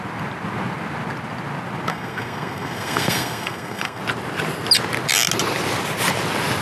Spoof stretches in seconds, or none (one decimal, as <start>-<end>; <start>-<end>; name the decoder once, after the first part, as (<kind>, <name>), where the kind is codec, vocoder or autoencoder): 1.9-4.0 (codec, SNAC)